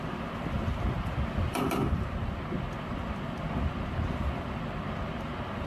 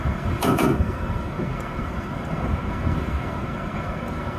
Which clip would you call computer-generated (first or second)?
second